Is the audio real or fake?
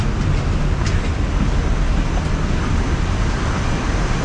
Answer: real